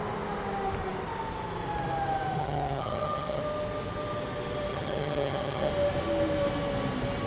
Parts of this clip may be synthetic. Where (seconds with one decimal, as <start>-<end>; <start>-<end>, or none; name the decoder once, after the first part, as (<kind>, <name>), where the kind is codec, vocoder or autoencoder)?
2.4-3.4 (vocoder, HiFi-GAN); 4.7-5.7